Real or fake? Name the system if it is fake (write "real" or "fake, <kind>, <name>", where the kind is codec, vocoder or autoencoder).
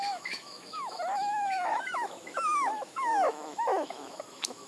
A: fake, autoencoder, DAC-VAE